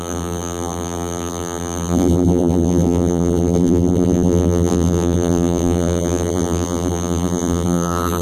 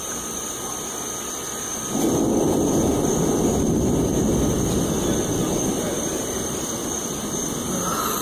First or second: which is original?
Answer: second